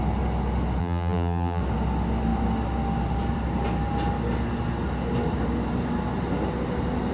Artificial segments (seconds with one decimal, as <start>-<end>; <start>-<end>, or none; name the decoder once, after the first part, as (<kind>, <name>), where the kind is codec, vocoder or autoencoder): 0.8-1.6 (vocoder, BigVGAN v2)